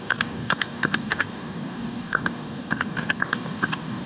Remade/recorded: remade